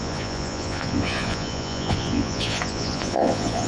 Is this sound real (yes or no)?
no